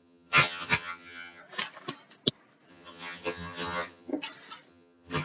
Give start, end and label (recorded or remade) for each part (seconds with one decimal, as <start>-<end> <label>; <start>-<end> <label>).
0.0-1.4 remade; 1.4-2.7 recorded; 2.7-4.1 remade; 4.1-4.7 recorded; 4.7-5.2 remade